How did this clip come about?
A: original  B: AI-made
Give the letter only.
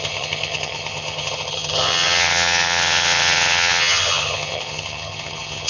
B